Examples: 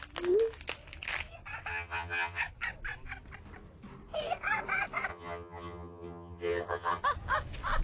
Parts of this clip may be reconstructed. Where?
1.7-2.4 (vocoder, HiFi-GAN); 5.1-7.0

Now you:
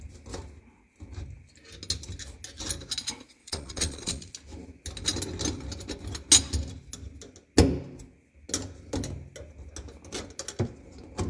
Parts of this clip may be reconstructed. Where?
3.4-4.3 (vocoder, Vocos)

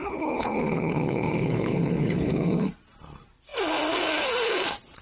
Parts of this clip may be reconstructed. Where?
0.0-2.7 (codec, HILCodec)

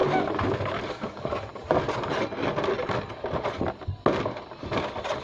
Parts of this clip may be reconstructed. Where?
none

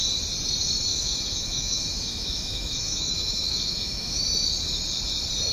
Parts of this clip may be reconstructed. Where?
0.9-4.2 (autoencoder, DAC-VAE)